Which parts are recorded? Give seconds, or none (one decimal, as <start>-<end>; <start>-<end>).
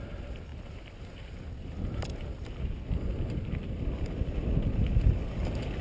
0.0-5.8